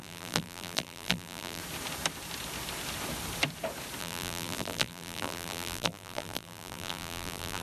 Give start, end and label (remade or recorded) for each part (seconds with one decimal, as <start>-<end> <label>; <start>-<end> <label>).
0.0-1.6 remade; 1.6-4.0 recorded; 4.0-7.6 remade